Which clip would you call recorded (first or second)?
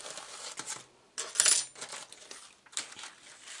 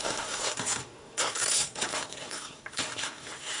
first